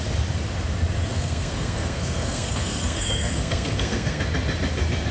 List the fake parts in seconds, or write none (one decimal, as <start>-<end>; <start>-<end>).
1.1-4.2